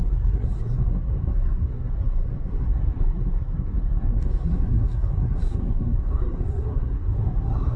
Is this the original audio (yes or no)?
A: no